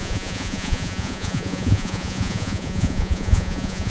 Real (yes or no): no